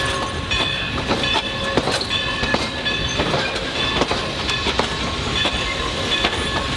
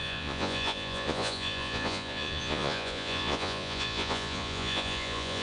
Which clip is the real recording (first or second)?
first